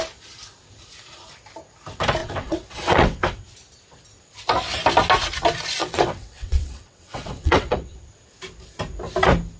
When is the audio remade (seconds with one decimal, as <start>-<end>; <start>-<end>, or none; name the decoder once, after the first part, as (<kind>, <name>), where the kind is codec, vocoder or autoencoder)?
2.2-3.4 (vocoder, WaveNeXt); 5.8-8.1